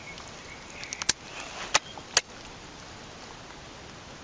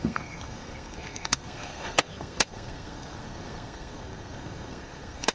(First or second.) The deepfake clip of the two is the second